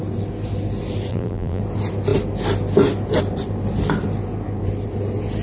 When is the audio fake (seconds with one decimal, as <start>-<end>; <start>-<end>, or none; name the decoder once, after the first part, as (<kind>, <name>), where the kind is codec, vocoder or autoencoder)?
1.1-1.6 (vocoder, BigVGAN v2)